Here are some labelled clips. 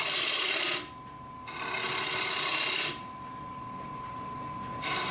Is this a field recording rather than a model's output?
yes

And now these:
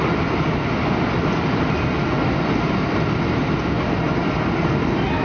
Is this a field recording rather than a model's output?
yes